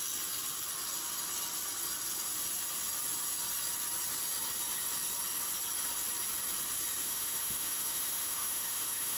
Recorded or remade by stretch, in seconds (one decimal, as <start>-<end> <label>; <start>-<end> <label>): 0.0-7.0 recorded; 7.0-9.2 remade